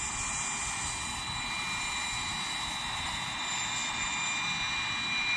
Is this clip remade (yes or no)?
no